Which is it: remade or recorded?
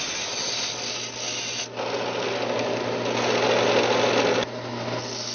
recorded